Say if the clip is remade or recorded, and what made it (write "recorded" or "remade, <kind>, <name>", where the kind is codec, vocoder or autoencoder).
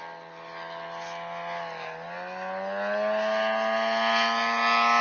recorded